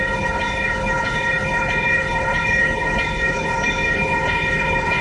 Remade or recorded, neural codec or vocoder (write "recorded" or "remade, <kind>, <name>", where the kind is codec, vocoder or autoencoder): remade, codec, HILCodec